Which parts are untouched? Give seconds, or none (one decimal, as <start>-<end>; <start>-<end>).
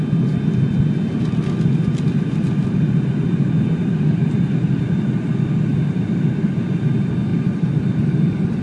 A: 0.0-8.6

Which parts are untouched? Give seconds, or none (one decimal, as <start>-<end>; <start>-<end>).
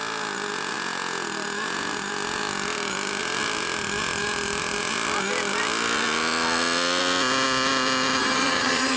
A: 0.0-8.2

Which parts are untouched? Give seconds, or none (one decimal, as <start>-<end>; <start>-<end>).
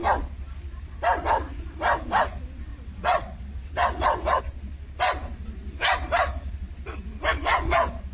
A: 0.0-2.7; 4.4-8.1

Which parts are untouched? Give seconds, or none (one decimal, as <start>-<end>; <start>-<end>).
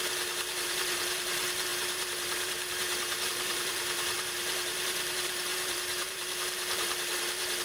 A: none